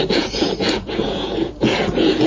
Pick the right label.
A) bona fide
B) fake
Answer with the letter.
B